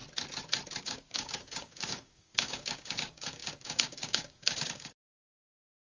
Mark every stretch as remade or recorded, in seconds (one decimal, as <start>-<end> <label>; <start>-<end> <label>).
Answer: 0.0-0.8 recorded; 0.8-5.9 remade